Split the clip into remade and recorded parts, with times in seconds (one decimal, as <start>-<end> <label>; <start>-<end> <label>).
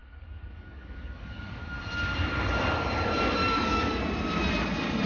0.0-1.6 remade; 1.6-3.4 recorded; 3.4-4.0 remade; 4.0-5.1 recorded